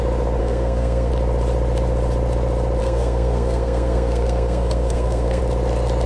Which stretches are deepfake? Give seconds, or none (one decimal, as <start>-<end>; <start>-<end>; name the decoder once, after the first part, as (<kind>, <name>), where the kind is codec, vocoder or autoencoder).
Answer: 0.4-1.1 (codec, SNAC); 2.8-5.4